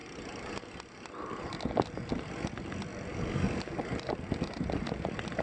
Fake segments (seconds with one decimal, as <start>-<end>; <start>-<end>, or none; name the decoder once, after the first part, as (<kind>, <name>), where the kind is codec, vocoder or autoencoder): 3.1-3.8 (codec, DAC)